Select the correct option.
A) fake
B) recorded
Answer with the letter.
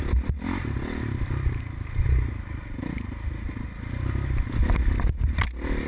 B